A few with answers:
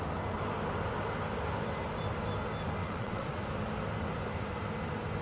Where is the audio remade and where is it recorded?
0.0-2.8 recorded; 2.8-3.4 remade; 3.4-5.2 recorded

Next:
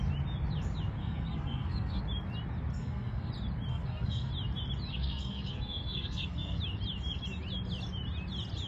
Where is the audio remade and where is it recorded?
0.0-1.0 recorded; 1.0-2.0 remade; 2.0-2.7 recorded; 2.7-3.3 remade; 3.3-3.7 recorded; 3.7-4.3 remade; 4.3-4.9 recorded; 4.9-6.6 remade; 6.6-8.7 recorded

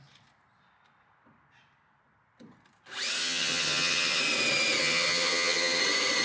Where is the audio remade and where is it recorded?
0.0-3.2 recorded; 3.2-4.2 remade; 4.2-4.8 recorded; 4.8-5.8 remade; 5.8-6.2 recorded